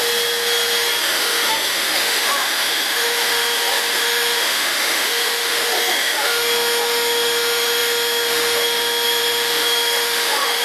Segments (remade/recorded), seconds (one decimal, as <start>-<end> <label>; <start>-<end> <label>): 0.0-1.0 recorded; 1.0-10.6 remade